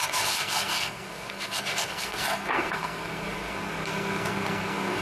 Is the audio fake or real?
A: fake